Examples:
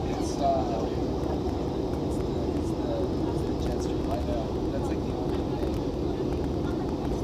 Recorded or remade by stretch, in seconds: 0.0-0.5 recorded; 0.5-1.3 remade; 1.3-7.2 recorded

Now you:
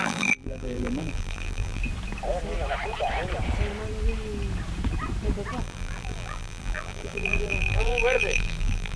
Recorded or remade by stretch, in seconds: 0.0-1.8 remade; 1.8-5.6 recorded; 5.6-9.0 remade

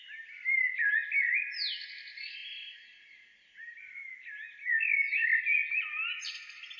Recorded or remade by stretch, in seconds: 0.0-6.8 recorded